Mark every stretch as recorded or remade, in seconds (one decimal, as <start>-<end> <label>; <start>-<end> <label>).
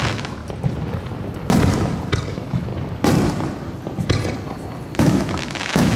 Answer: 0.0-0.4 remade; 0.4-2.3 recorded; 2.3-2.7 remade; 2.7-5.0 recorded; 5.0-6.0 remade